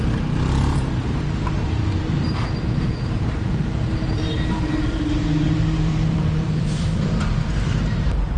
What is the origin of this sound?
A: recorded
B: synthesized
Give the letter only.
B